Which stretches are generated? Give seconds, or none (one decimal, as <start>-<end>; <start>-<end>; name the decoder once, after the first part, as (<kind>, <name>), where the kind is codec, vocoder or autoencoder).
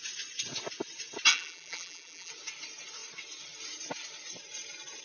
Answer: 1.3-2.3 (vocoder, BigVGAN v2)